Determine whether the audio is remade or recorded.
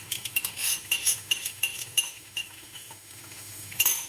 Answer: remade